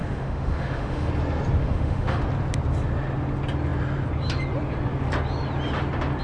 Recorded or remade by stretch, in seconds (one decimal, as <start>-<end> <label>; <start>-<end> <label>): 0.0-1.1 remade; 1.1-1.6 recorded; 1.6-2.2 remade; 2.2-6.2 recorded